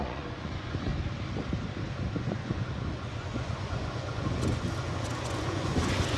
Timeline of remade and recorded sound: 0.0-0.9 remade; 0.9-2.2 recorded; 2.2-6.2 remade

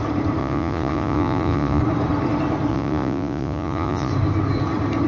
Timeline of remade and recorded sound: 0.0-0.4 recorded; 0.4-1.8 remade; 1.8-2.7 recorded; 2.7-4.1 remade; 4.1-5.1 recorded

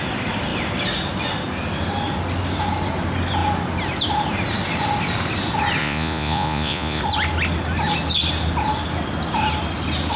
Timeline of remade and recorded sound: 0.0-5.8 recorded; 5.8-7.0 remade; 7.0-10.2 recorded

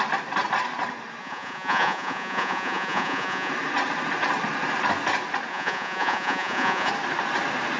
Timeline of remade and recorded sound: 0.0-1.2 recorded; 1.2-3.5 remade; 3.5-5.5 recorded; 5.5-6.9 remade; 6.9-7.8 recorded

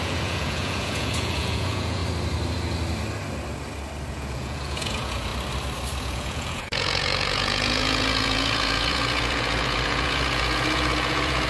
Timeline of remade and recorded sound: 0.0-2.0 remade; 2.0-4.1 recorded; 4.1-5.3 remade; 5.3-6.0 recorded; 6.0-11.5 remade

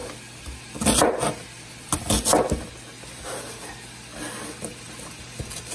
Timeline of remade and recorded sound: 0.0-5.7 recorded

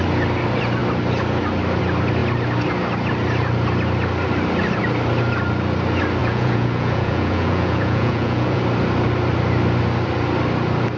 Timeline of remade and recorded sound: 0.0-6.2 recorded; 6.2-8.6 remade; 8.6-11.0 recorded

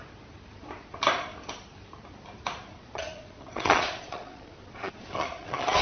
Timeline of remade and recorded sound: 0.0-2.7 recorded; 2.7-5.8 remade